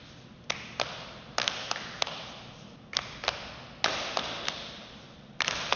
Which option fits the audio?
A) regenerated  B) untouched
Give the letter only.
B